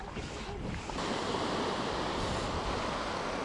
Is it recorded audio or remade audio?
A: recorded